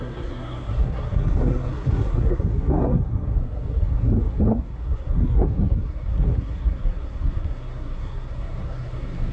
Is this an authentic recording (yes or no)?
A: no